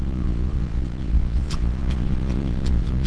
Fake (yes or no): yes